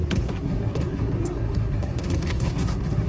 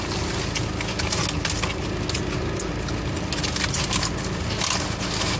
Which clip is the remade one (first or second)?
first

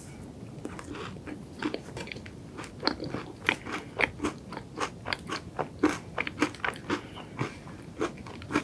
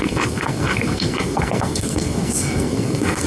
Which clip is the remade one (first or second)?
second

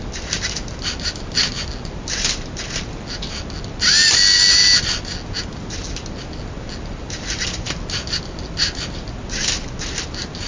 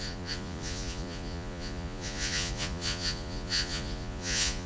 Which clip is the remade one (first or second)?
second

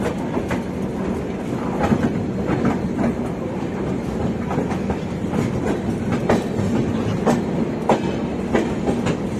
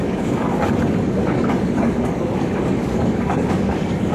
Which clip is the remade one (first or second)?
second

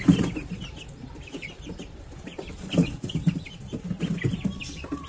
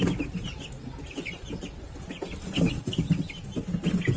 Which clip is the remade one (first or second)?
first